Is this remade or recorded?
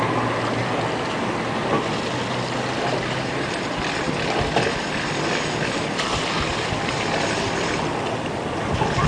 recorded